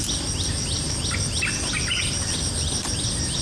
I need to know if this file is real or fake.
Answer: real